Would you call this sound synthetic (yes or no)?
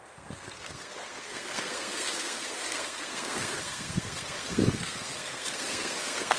yes